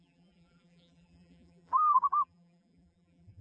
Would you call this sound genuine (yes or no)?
no